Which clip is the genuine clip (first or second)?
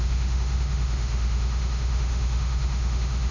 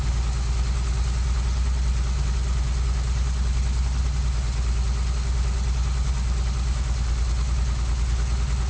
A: second